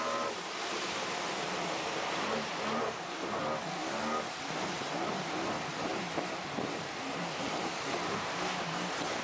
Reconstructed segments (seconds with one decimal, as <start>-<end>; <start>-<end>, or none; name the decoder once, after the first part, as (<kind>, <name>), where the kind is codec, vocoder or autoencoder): 0.0-3.4 (vocoder, BigVGAN v2); 4.5-5.9; 6.4-9.2